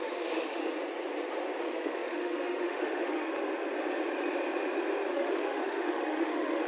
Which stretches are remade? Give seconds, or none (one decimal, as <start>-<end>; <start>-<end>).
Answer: 0.0-0.6; 1.6-3.2; 5.1-6.7